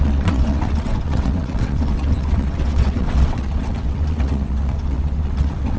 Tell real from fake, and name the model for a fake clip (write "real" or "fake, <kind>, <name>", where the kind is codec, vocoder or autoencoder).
fake, vocoder, WaveNeXt